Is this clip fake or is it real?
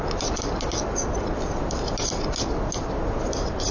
real